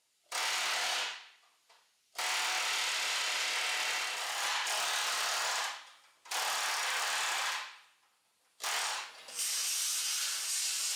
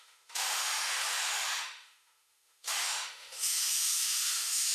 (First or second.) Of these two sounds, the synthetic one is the second